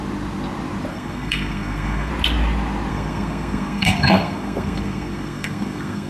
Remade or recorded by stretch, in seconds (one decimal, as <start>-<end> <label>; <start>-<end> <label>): 0.0-0.9 recorded; 0.9-2.1 remade; 2.1-2.9 recorded; 2.9-6.1 remade